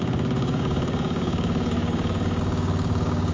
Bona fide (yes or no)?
no